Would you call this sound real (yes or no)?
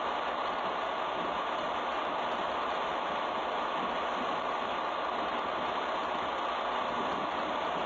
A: yes